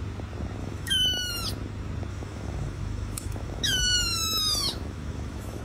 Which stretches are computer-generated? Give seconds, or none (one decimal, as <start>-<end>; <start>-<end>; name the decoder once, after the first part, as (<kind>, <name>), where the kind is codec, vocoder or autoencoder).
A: 0.6-1.3 (autoencoder, DAC-VAE); 2.1-5.6